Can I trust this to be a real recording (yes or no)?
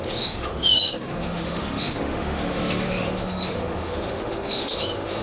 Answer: no